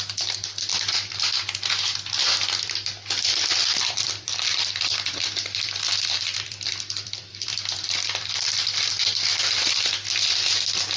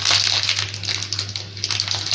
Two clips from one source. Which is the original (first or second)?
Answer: second